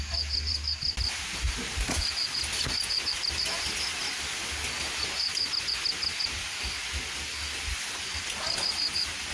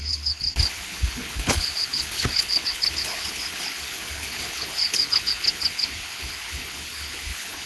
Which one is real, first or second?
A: first